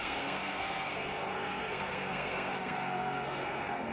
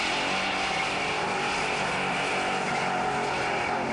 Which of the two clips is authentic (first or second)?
second